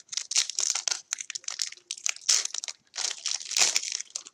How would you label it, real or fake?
real